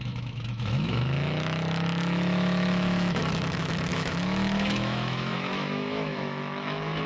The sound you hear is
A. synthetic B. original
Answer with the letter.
A